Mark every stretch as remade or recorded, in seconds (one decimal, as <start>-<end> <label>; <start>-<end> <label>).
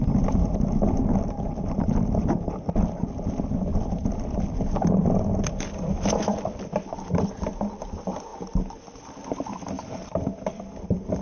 0.0-11.2 recorded